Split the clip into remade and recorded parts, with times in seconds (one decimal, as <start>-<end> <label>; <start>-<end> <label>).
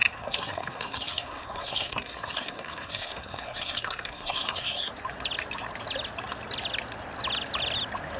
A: 0.0-4.9 remade; 4.9-8.2 recorded